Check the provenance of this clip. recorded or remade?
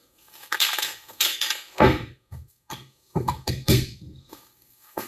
remade